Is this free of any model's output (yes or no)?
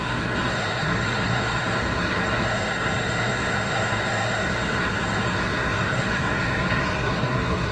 no